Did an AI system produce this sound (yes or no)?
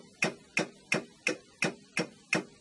no